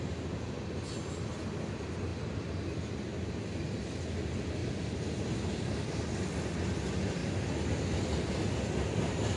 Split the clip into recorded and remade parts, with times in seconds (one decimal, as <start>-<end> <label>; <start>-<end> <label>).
0.0-9.4 recorded